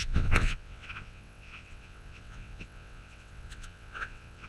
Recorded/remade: remade